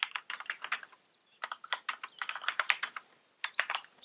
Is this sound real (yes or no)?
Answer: yes